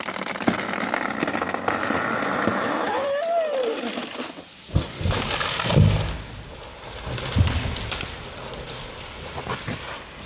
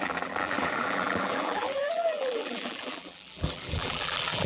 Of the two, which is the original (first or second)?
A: first